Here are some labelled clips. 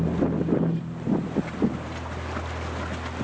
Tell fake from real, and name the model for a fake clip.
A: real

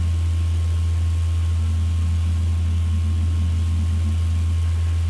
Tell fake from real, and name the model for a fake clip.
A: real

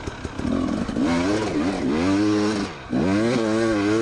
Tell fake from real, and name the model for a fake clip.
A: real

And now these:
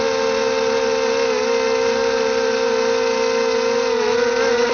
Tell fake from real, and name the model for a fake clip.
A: real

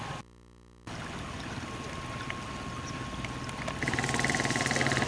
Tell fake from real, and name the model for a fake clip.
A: real